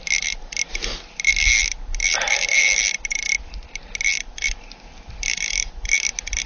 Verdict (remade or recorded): recorded